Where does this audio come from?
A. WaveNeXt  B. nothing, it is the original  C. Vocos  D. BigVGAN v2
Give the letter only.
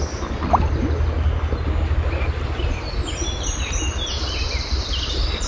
B